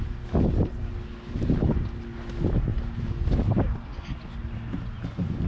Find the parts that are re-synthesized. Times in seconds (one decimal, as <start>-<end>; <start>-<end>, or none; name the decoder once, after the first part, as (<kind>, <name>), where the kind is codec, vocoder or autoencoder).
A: none